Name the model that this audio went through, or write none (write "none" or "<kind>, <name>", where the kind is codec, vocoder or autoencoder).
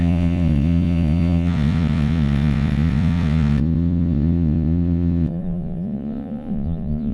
vocoder, Vocos